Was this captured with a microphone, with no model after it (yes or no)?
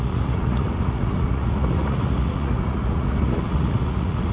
no